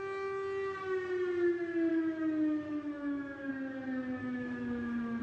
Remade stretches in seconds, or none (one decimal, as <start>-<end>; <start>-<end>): 1.9-3.5; 4.2-5.2